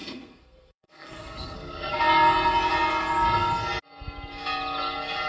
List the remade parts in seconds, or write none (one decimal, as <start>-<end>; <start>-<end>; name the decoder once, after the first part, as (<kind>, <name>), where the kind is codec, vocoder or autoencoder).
0.0-1.9 (codec, SNAC)